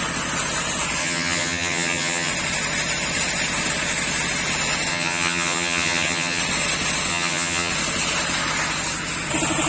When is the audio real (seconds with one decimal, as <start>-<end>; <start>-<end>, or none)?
0.0-1.0; 2.3-4.9; 6.4-7.1; 7.7-9.7